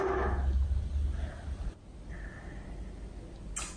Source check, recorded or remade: recorded